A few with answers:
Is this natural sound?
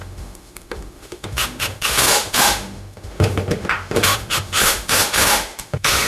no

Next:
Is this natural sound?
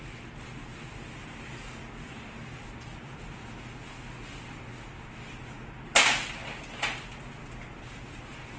yes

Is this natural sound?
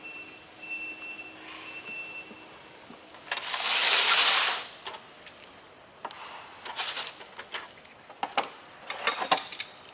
yes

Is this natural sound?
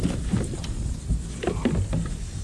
yes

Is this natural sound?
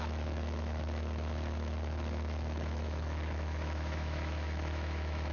no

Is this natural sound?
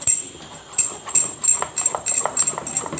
yes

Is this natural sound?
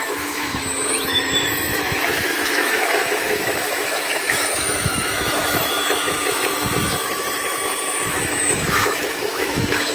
no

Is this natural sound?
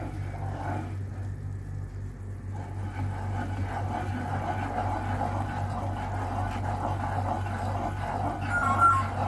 yes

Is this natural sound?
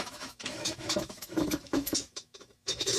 no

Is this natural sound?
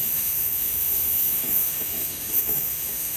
no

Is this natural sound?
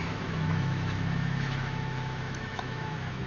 no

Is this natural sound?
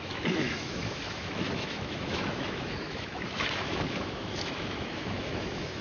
no